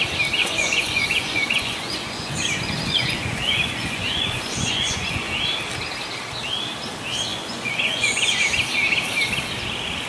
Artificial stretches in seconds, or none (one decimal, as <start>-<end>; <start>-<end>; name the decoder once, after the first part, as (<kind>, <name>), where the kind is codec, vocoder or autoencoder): 0.4-5.4 (vocoder, Vocos); 7.3-8.4